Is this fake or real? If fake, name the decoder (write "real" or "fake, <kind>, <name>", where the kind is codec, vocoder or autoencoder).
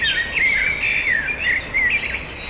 real